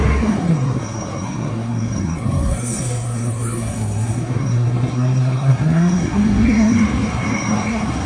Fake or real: fake